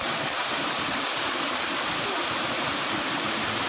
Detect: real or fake fake